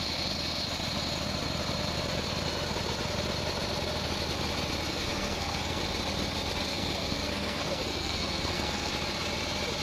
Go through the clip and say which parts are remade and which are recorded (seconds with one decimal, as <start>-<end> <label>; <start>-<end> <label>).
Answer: 0.0-4.9 recorded; 4.9-5.8 remade; 5.8-6.7 recorded; 6.7-8.9 remade; 8.9-9.8 recorded